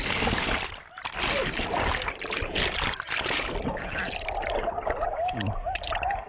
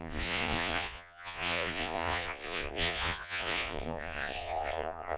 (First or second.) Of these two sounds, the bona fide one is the first